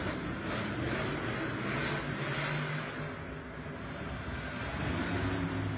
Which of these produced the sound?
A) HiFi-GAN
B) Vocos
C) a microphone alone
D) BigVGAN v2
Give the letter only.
C